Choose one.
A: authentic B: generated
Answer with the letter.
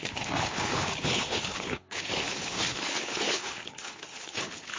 B